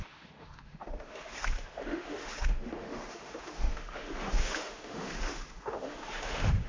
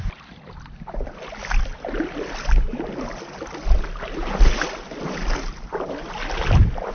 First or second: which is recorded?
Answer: second